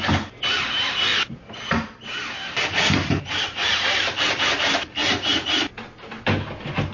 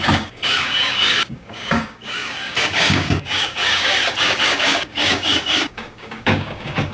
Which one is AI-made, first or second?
second